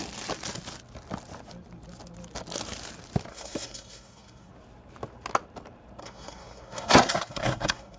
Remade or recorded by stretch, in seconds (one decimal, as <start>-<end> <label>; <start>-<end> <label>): 0.0-3.3 recorded; 3.3-4.5 remade; 4.5-6.0 recorded; 6.0-8.0 remade